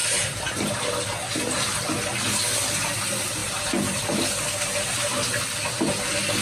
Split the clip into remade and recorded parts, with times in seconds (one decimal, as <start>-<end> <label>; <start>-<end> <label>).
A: 0.0-1.1 remade; 1.1-3.4 recorded; 3.4-4.0 remade; 4.0-6.4 recorded